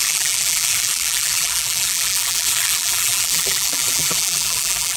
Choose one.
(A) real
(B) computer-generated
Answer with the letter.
B